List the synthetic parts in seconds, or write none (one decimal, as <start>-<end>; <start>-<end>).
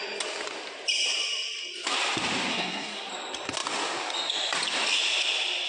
2.5-3.1